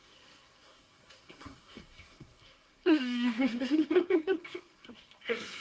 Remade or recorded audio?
remade